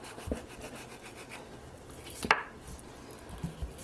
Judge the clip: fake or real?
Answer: real